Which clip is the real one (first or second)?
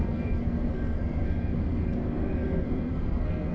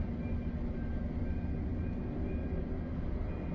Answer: second